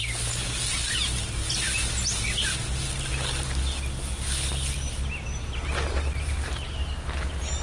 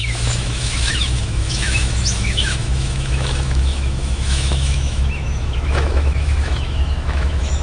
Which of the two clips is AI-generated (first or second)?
second